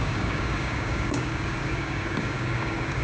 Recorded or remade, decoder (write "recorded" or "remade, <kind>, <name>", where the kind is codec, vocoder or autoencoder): remade, codec, DAC